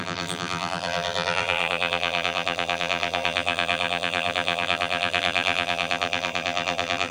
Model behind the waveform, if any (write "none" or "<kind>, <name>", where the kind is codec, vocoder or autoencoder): vocoder, BigVGAN v2